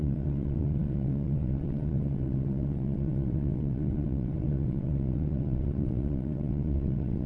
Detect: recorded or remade remade